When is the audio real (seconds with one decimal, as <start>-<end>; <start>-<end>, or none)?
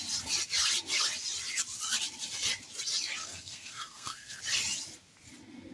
0.0-3.2; 4.4-5.7